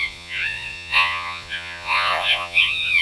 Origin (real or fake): fake